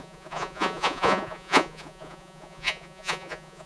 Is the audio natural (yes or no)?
no